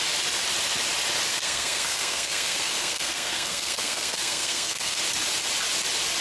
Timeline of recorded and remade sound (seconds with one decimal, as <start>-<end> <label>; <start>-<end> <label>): 0.0-1.3 recorded; 1.3-5.0 remade; 5.0-6.2 recorded

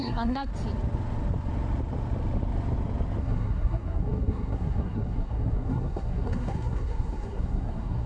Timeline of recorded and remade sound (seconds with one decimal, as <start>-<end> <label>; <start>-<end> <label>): 0.0-0.5 remade; 0.5-3.2 recorded; 3.2-8.1 remade